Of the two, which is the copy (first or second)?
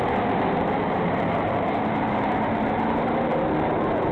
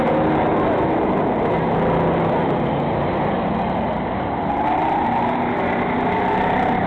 first